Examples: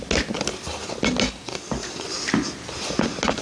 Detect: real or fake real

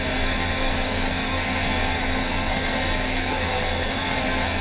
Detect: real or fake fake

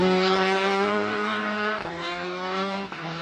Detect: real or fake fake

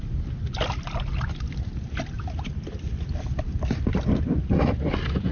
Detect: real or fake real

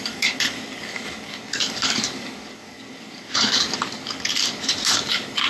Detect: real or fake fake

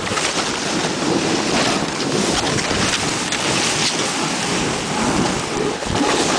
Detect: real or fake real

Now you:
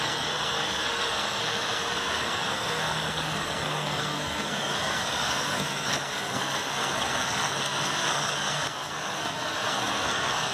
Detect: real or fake fake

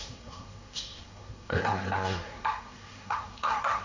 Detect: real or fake fake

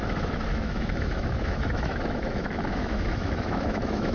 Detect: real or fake fake